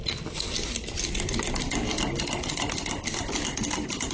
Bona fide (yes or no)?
yes